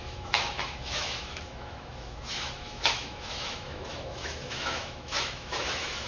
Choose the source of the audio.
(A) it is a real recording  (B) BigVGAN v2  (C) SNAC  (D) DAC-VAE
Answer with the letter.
D